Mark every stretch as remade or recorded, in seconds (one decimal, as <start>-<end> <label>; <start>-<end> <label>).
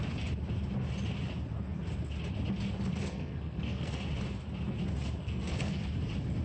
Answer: 0.0-3.0 recorded; 3.0-4.0 remade; 4.0-5.2 recorded; 5.2-5.8 remade; 5.8-6.4 recorded